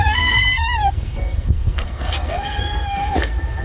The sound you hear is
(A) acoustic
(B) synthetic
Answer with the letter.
B